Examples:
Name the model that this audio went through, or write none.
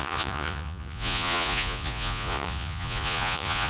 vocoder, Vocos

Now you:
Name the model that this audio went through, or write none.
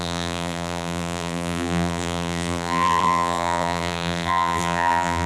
vocoder, BigVGAN v2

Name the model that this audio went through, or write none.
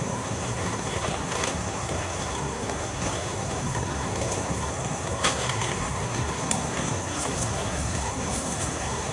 codec, SNAC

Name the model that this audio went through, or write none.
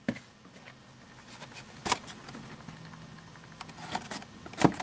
none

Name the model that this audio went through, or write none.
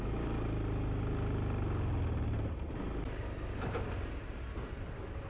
none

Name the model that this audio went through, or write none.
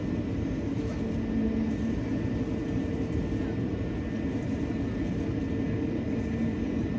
none